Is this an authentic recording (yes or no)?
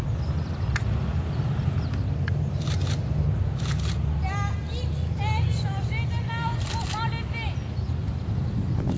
yes